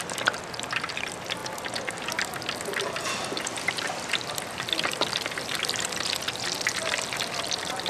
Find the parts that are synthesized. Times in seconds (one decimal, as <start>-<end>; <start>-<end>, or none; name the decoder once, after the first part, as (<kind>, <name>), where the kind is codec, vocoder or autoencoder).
none